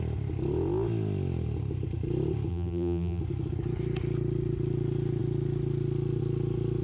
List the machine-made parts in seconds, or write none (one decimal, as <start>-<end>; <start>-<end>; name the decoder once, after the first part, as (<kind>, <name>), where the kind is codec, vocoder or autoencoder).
2.5-3.2 (vocoder, BigVGAN v2)